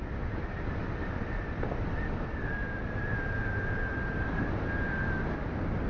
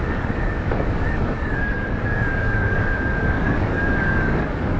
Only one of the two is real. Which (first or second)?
first